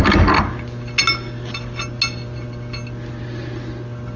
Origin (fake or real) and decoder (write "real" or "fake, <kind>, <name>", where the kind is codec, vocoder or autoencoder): real